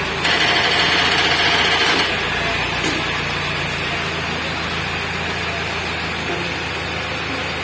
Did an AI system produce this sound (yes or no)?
no